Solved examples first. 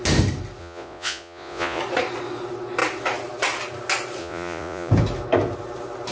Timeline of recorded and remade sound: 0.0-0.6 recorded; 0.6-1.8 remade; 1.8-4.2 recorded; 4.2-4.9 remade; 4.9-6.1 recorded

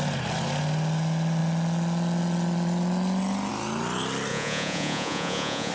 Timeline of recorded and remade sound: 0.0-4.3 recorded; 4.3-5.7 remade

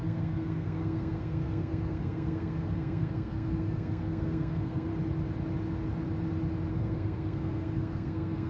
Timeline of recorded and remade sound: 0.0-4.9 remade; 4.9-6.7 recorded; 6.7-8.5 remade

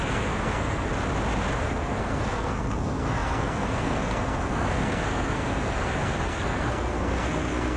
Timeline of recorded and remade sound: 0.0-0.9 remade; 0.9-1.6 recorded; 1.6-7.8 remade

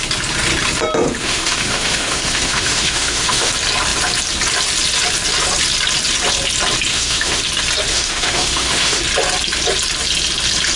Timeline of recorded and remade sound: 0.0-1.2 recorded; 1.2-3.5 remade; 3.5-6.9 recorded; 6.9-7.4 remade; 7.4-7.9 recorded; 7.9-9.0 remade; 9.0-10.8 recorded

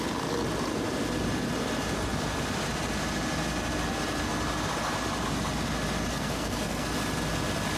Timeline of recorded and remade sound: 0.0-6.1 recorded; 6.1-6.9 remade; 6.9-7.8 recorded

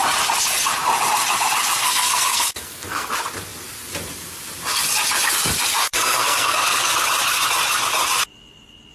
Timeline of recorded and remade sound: 0.0-1.8 recorded; 1.8-3.1 remade; 3.1-5.8 recorded; 5.8-6.9 remade; 6.9-8.9 recorded